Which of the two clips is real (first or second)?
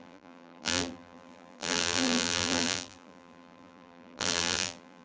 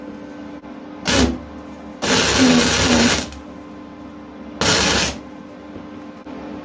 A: second